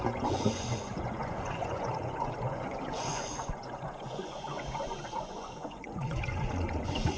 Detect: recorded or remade remade